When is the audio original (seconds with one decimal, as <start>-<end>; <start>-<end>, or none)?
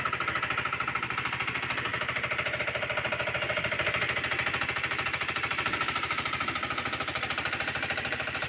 none